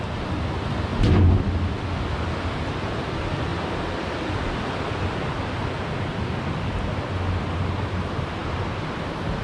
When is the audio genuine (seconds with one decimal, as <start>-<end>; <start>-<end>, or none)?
0.0-0.9; 1.5-8.4